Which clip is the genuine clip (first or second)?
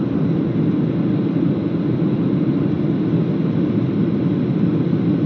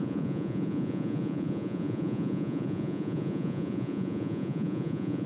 first